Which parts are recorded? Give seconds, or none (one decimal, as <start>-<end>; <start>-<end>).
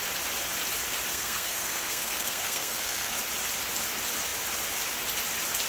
0.0-1.1; 3.2-5.7